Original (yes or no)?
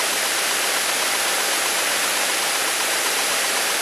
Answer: yes